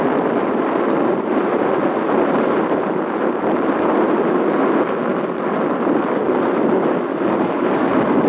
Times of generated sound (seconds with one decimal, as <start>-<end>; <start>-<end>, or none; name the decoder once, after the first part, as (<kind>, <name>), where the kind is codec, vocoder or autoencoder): 7.1-7.9 (codec, DAC)